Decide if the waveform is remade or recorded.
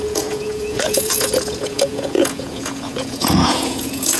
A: remade